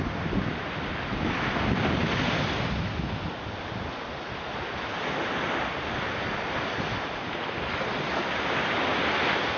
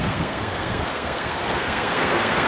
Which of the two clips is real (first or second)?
first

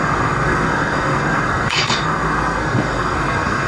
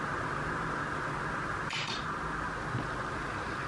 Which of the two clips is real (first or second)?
second